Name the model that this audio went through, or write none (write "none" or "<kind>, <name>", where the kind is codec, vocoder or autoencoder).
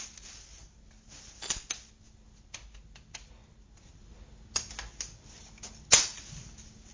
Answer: none